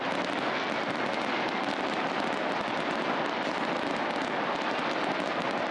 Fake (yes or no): no